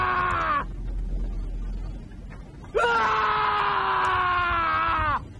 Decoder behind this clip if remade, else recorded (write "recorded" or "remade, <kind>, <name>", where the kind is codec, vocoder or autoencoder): recorded